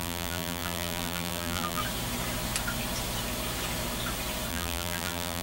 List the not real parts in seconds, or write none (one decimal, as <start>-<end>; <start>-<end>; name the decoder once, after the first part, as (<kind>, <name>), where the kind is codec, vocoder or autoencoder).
0.0-1.8 (vocoder, BigVGAN v2); 4.5-5.4